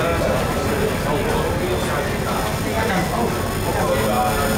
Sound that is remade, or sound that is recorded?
recorded